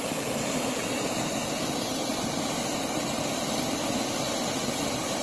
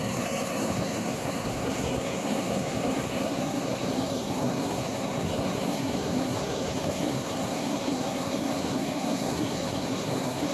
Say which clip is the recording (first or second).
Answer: first